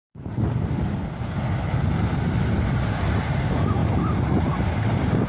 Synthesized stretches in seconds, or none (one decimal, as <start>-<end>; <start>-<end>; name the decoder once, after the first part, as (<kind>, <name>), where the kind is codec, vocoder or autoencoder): none